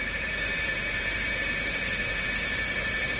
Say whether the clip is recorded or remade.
remade